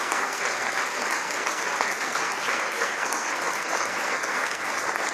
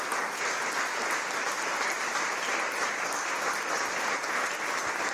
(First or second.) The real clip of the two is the second